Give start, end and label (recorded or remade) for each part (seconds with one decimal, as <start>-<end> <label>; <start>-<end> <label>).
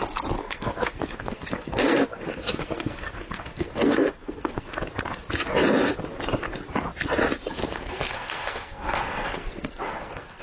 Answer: 0.0-0.4 recorded; 0.4-4.8 remade; 4.8-7.6 recorded; 7.6-10.4 remade